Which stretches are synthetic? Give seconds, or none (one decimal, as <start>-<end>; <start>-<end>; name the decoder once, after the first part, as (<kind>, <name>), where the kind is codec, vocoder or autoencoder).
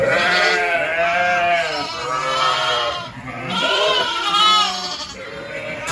none